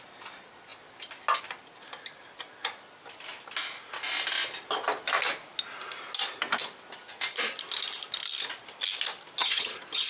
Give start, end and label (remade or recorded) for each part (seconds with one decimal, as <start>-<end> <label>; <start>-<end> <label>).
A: 0.0-9.4 recorded; 9.4-10.1 remade